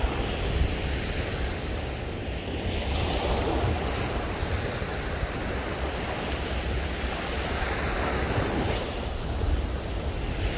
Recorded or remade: remade